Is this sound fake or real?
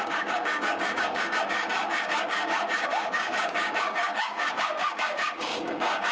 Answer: fake